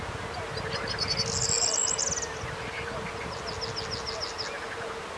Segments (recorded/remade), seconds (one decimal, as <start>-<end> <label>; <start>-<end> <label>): 0.0-5.2 recorded